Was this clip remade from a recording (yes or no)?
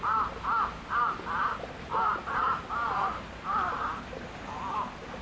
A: no